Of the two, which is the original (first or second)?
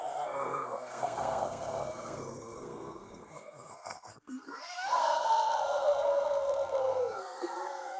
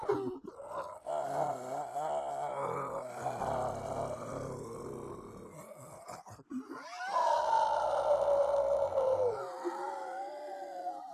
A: second